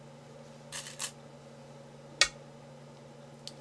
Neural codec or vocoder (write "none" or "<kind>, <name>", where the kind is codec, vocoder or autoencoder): none